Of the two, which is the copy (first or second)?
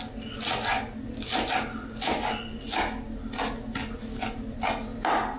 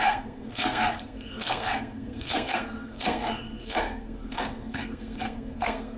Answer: second